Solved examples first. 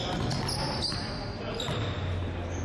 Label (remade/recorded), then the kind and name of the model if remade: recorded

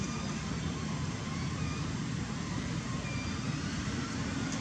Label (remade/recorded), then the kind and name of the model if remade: recorded